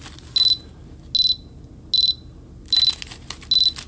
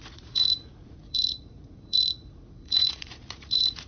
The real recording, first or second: first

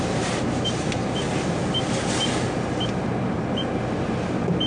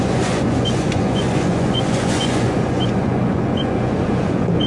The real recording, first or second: first